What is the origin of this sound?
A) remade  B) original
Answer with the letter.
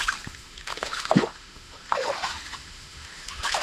A